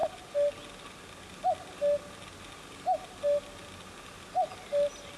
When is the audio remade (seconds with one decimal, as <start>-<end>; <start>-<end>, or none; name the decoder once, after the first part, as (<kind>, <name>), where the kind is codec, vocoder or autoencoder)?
none